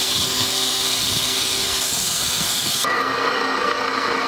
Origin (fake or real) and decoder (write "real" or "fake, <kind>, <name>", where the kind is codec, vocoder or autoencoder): fake, codec, SNAC